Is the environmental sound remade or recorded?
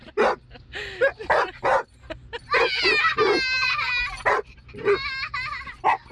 recorded